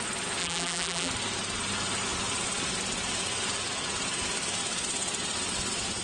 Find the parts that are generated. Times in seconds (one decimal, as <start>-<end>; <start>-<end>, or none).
0.4-1.1